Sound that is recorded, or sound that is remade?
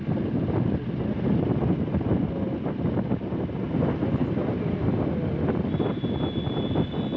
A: recorded